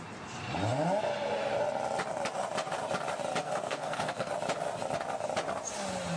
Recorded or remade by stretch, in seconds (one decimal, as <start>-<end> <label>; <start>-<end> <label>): 0.0-3.4 recorded; 3.4-4.3 remade; 4.3-6.2 recorded